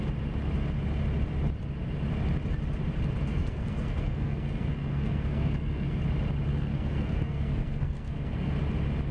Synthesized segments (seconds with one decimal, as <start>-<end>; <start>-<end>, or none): 3.3-6.0; 6.5-8.5